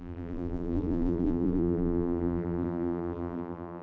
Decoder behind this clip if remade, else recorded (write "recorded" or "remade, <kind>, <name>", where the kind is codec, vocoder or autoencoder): remade, vocoder, BigVGAN v2